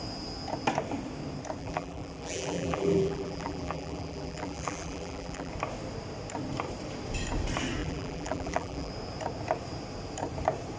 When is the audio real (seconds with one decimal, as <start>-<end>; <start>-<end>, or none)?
0.0-1.6; 5.5-7.8; 8.9-10.8